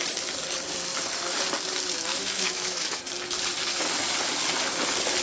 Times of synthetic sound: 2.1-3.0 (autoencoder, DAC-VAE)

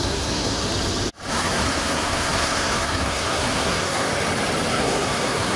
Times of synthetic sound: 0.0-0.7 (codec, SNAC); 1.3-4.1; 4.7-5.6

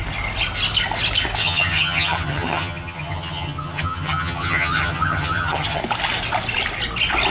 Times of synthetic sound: 1.4-5.8 (vocoder, HiFi-GAN)